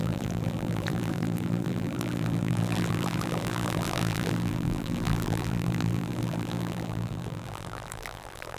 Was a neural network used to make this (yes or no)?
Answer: yes